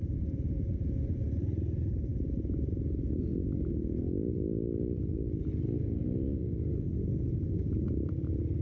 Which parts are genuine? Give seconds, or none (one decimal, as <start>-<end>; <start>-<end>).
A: 0.0-8.6